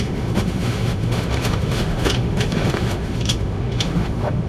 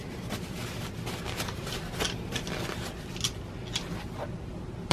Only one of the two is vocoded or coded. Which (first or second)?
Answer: first